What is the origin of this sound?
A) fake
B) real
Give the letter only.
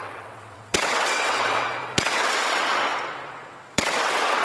A